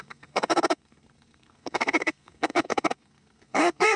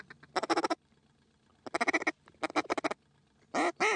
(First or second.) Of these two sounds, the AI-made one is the first